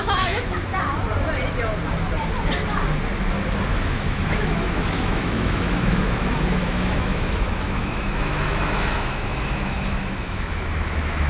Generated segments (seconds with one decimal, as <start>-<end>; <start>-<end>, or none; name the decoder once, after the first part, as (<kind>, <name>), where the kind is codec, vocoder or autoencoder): 0.0-0.7 (autoencoder, DAC-VAE); 3.7-11.3